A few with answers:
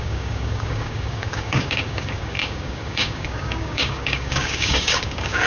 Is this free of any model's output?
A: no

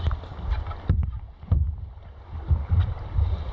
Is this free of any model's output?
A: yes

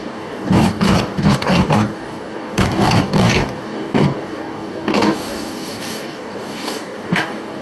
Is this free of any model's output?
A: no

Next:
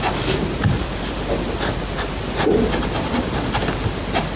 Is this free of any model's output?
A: yes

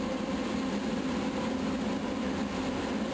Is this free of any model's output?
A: yes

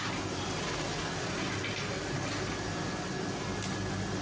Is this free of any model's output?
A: yes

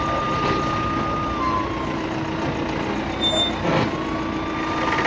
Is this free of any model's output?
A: yes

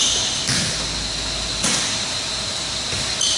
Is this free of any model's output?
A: yes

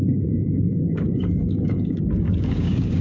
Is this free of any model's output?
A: no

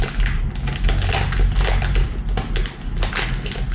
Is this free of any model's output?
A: yes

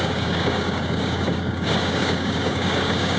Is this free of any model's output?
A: no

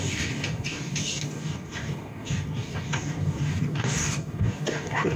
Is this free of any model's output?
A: no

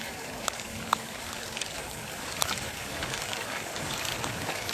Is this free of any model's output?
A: no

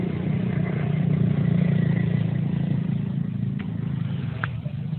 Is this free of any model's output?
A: yes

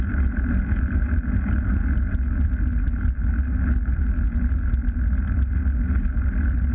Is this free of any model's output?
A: yes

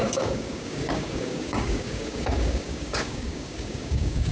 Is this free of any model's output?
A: no